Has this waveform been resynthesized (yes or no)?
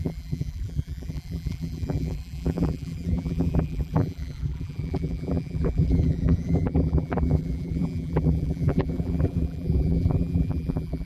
yes